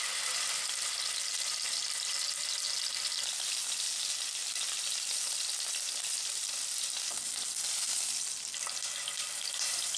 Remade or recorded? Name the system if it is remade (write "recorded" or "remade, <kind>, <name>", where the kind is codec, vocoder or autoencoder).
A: recorded